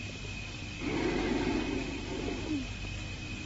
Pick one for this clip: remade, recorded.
remade